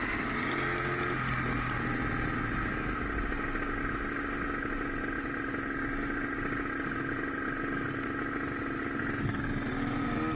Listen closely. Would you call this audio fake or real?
real